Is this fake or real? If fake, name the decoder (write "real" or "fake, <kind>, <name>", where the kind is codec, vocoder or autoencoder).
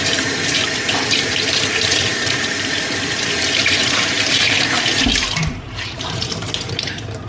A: fake, vocoder, BigVGAN v2